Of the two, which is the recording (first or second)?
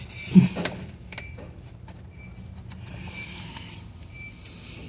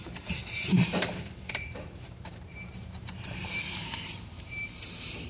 first